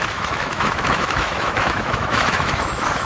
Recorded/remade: remade